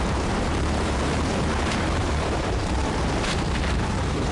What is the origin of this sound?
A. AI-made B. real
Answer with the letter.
A